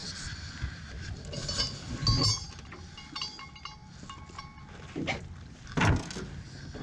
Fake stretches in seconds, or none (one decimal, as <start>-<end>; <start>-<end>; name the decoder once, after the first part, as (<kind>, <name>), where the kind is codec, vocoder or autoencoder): none